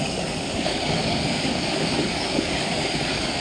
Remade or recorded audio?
remade